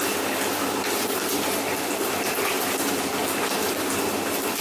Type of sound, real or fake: real